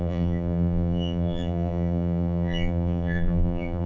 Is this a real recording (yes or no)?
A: no